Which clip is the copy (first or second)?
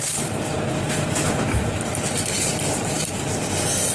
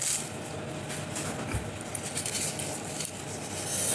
first